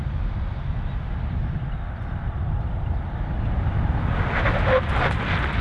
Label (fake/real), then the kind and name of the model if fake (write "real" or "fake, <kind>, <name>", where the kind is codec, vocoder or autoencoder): real